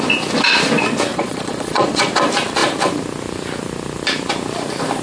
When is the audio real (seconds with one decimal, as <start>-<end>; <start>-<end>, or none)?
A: 0.0-1.1; 2.1-5.0